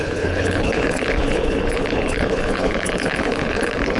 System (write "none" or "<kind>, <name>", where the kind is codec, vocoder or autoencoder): codec, HILCodec